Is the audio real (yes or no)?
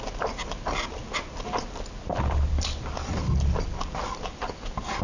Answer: yes